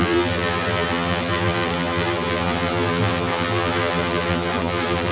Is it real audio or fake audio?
fake